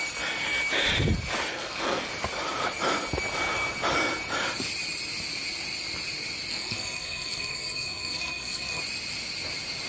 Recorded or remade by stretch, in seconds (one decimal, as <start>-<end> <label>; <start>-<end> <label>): 0.0-1.5 recorded; 1.5-2.1 remade; 2.1-6.5 recorded; 6.5-8.8 remade; 8.8-9.9 recorded